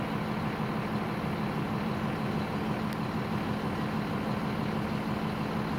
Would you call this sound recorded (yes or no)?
yes